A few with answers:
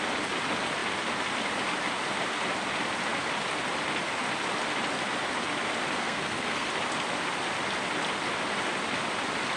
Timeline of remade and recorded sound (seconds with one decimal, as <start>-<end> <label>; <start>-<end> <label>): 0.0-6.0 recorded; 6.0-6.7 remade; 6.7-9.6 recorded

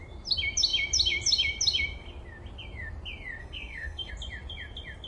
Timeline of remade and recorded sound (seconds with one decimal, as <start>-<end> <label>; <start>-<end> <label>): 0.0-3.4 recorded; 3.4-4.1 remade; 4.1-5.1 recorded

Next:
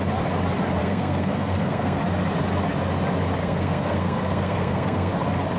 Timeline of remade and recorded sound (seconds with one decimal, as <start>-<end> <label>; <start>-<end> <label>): 0.0-0.8 recorded; 0.8-2.0 remade; 2.0-3.4 recorded; 3.4-5.1 remade; 5.1-5.6 recorded